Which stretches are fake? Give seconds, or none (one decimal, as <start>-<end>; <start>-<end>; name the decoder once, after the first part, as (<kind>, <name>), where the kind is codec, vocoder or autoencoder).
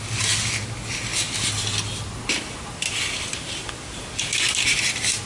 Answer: none